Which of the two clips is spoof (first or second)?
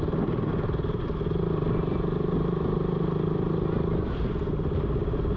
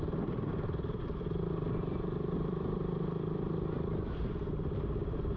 second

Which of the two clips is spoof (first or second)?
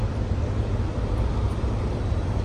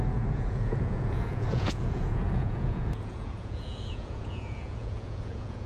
second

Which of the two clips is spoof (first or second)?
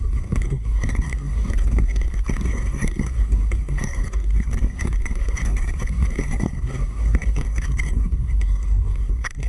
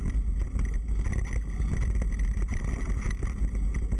first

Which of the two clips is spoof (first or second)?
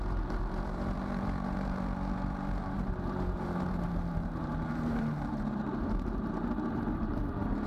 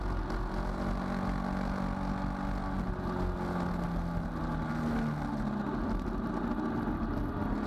first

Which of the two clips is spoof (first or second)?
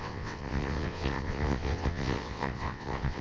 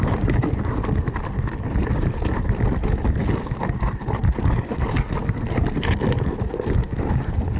first